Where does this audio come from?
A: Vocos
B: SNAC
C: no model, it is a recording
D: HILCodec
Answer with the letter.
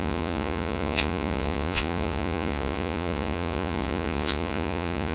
A